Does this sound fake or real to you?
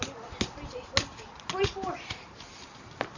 real